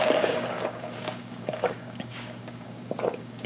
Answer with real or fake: fake